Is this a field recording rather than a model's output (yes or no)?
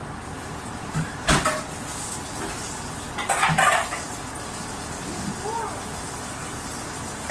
yes